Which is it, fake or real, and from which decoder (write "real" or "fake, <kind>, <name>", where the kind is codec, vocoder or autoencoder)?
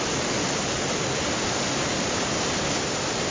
real